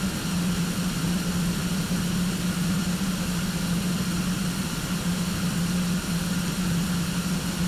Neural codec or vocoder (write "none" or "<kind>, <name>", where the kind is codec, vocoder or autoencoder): none